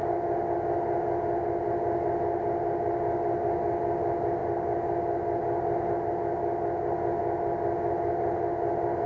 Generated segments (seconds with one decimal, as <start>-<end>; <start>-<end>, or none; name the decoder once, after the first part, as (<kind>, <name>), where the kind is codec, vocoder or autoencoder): none